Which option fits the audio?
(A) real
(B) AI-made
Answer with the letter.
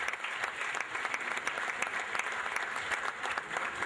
A